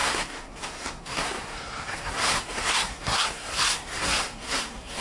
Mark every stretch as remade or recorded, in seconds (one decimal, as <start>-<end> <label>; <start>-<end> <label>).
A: 0.0-5.0 remade